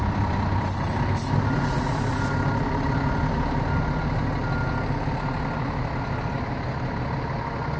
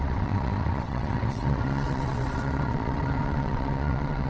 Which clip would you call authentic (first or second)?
first